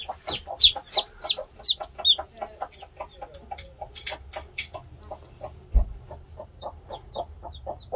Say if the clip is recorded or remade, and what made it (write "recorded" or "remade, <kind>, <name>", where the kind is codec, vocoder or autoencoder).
recorded